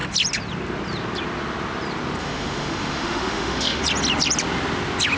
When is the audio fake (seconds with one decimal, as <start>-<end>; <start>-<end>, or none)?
2.2-3.8